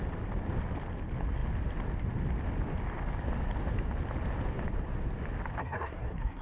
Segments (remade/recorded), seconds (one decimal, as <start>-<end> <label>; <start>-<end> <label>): 0.0-5.6 recorded; 5.6-6.4 remade